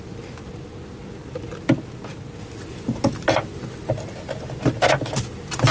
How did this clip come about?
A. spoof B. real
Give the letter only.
B